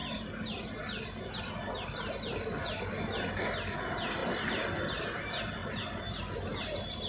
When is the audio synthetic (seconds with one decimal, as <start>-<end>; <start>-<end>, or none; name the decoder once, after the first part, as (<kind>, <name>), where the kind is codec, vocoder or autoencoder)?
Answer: none